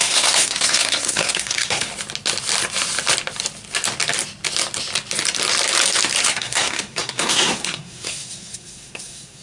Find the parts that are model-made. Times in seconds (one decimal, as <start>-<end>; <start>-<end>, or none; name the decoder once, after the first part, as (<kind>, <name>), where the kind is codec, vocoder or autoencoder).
0.0-1.9 (codec, SNAC); 6.2-9.4